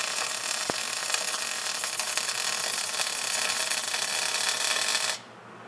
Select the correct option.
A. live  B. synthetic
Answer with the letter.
A